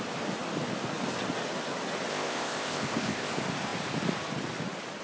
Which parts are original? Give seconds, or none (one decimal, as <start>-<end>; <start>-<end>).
0.0-2.1; 3.3-5.0